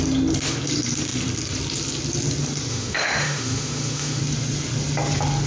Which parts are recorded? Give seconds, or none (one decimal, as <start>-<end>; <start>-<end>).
0.0-2.7; 4.2-5.5